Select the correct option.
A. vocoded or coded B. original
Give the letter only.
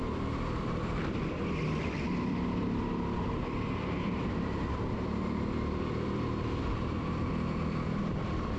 A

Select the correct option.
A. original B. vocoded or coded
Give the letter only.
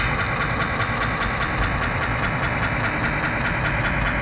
A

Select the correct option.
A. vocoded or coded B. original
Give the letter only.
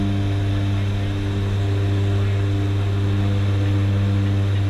B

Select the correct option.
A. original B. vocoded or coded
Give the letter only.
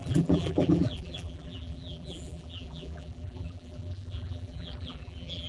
B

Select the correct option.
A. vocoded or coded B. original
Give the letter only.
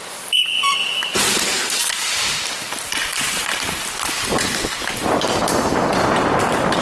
A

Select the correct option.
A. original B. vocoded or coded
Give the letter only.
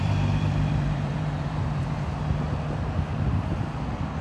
B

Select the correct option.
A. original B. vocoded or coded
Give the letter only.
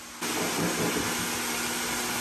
A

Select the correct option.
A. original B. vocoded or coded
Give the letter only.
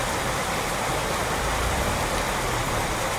A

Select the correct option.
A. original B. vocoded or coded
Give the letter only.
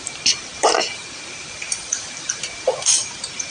B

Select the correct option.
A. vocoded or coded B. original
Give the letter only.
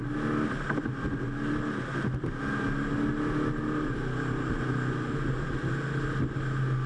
B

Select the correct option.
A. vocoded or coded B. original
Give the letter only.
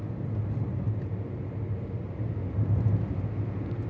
B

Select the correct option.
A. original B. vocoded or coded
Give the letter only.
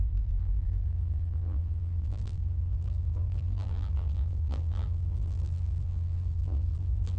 B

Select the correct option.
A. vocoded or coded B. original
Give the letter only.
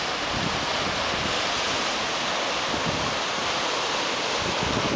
B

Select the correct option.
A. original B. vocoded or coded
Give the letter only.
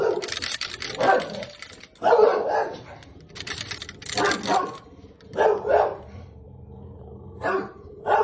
A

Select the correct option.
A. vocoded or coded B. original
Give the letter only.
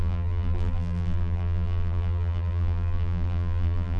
A